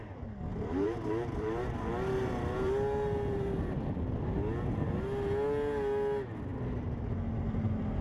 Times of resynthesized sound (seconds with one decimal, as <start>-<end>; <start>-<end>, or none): 0.5-4.0